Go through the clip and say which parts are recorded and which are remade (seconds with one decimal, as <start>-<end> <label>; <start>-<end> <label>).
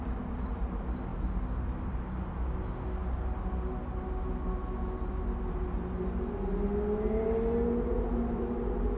0.0-9.0 recorded